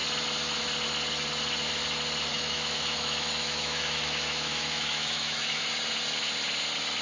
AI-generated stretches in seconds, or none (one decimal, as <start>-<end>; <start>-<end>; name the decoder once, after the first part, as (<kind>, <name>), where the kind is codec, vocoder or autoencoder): 2.3-5.6 (autoencoder, DAC-VAE)